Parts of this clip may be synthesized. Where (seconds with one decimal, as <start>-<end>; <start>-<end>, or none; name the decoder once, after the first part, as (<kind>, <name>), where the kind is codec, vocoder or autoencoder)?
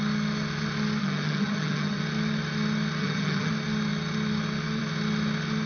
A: 1.0-2.0 (vocoder, HiFi-GAN); 3.0-3.5